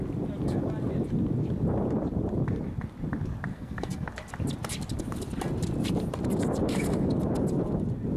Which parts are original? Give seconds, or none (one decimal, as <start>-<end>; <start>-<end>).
0.0-3.5; 4.1-8.2

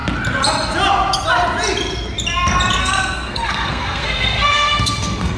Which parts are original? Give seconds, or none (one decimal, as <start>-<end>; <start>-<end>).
0.0-2.8

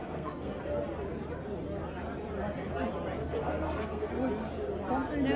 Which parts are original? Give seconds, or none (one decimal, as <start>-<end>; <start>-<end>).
0.6-3.2; 4.1-5.4

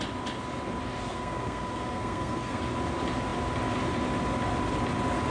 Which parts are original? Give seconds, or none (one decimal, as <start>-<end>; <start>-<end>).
0.0-1.1; 2.6-5.3